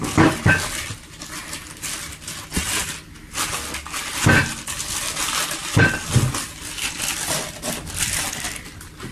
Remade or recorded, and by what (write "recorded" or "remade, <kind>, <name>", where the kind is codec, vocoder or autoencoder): recorded